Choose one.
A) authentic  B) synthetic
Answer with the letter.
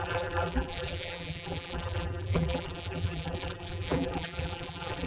B